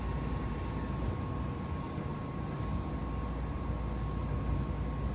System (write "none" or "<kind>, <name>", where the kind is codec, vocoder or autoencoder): none